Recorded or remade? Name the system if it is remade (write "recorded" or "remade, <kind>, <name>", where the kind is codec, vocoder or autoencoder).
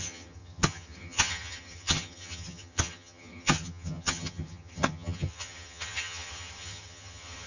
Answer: remade, vocoder, HiFi-GAN